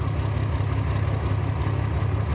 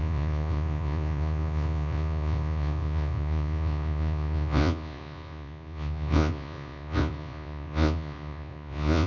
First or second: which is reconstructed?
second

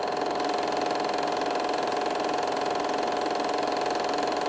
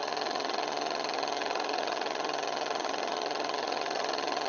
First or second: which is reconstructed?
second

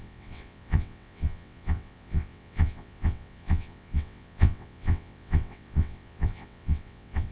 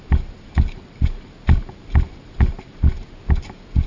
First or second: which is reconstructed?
first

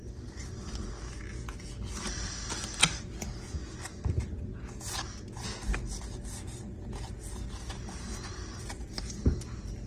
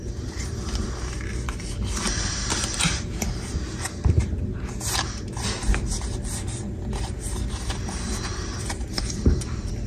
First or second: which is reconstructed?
second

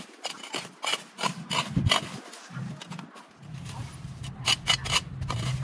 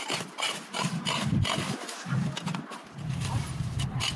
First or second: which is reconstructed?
second